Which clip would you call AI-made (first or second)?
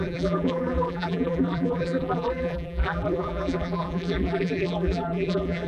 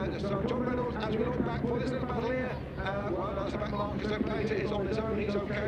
first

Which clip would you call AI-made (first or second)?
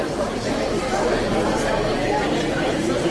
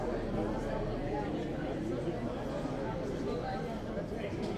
first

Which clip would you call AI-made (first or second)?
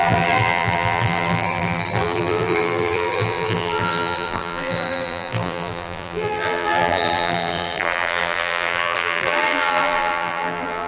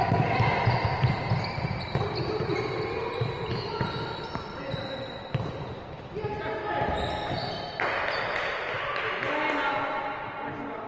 first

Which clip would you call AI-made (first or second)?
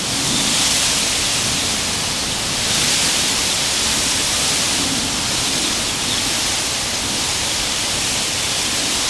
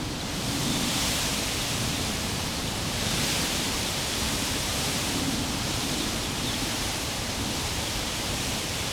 second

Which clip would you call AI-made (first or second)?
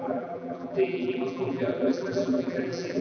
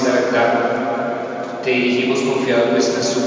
first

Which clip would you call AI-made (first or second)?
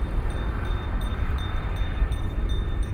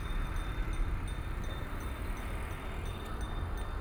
first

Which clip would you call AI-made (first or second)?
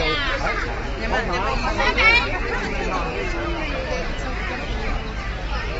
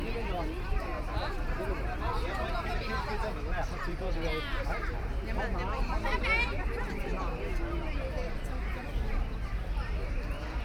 second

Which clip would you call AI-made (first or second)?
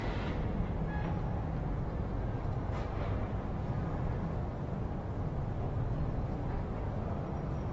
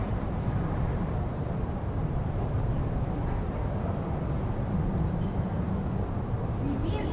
second